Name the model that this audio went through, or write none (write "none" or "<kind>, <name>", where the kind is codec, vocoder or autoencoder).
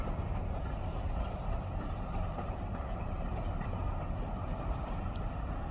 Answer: none